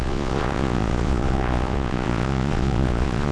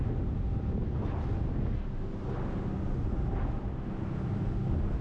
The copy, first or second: first